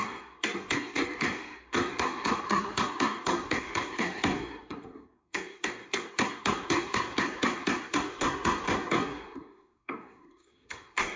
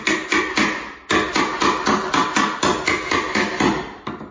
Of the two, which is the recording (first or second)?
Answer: second